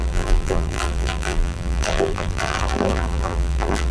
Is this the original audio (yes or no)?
no